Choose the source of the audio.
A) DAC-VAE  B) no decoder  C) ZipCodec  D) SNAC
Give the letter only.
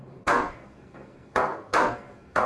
D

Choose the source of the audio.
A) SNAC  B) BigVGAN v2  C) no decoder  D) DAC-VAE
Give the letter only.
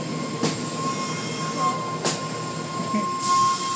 C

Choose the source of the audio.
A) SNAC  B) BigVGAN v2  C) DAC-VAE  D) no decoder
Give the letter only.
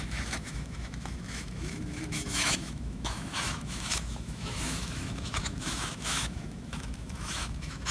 C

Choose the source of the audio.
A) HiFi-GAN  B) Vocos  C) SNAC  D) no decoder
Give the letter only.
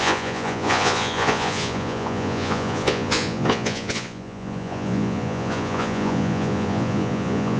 B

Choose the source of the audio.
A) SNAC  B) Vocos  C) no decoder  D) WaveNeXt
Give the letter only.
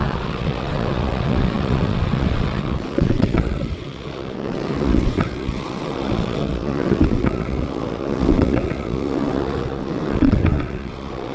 D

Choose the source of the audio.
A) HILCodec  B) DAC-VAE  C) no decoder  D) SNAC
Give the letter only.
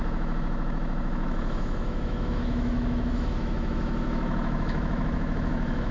B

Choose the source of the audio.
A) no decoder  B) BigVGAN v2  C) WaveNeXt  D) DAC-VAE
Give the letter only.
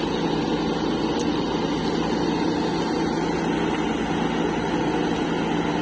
A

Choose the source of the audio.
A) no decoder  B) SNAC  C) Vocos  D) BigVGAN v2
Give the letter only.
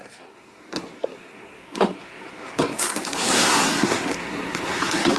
B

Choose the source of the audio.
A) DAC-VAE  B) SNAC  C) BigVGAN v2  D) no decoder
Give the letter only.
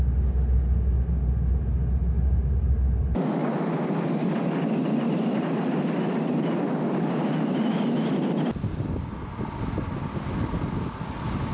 D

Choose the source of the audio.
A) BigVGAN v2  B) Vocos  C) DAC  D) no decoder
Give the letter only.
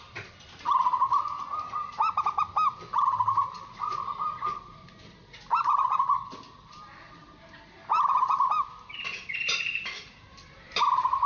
A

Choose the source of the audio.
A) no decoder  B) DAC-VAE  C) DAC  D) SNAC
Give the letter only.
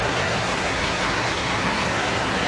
D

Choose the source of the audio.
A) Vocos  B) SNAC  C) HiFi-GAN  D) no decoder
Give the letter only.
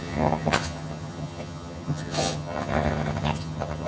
C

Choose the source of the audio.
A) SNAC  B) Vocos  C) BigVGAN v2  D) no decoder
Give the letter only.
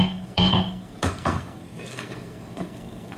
A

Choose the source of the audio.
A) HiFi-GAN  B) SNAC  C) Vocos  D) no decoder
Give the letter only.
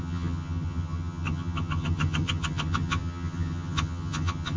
A